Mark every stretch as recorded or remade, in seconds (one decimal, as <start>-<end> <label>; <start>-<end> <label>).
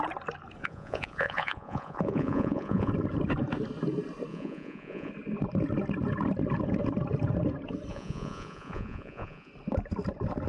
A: 0.0-0.6 recorded; 0.6-2.9 remade; 2.9-4.3 recorded; 4.3-5.1 remade; 5.1-7.9 recorded; 7.9-9.5 remade; 9.5-10.5 recorded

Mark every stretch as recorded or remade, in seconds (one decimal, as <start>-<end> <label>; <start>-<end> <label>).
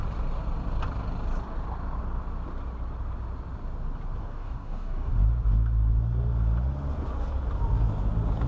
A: 0.0-4.2 recorded; 4.2-5.1 remade; 5.1-8.5 recorded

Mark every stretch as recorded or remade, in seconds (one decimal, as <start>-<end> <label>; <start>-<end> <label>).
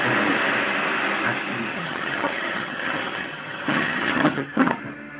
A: 0.0-1.7 recorded; 1.7-4.8 remade; 4.8-5.2 recorded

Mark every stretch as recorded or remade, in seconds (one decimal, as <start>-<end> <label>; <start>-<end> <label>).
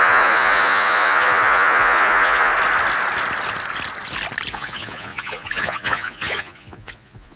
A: 0.0-2.5 remade; 2.5-4.5 recorded; 4.5-7.4 remade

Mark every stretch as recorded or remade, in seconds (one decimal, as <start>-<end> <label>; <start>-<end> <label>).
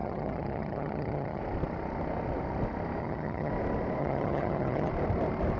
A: 0.0-1.4 remade; 1.4-3.0 recorded; 3.0-3.5 remade; 3.5-4.0 recorded; 4.0-4.9 remade; 4.9-5.6 recorded